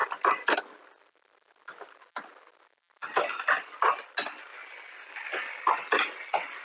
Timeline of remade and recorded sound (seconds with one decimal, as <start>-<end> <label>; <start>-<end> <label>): 0.0-6.6 recorded